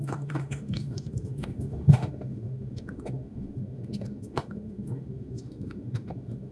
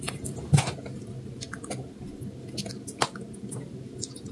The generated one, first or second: first